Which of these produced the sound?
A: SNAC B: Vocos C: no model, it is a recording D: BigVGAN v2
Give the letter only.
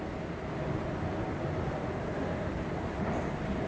C